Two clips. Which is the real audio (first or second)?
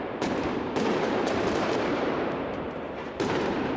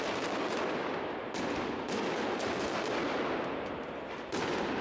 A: second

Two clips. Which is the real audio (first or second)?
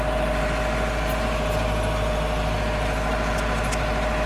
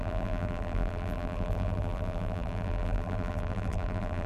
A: first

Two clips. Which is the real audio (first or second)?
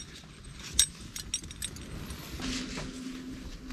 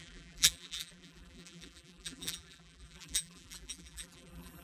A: first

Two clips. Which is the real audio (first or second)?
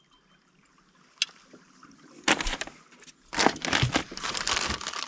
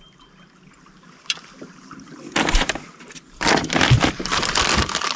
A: first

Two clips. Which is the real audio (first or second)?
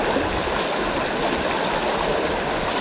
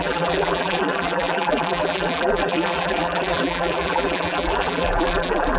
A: first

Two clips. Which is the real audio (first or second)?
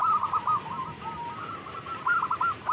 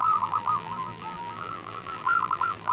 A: first